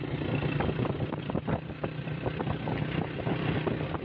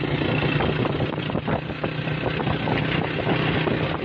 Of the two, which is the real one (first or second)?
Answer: second